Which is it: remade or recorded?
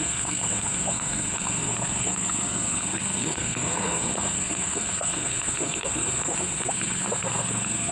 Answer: remade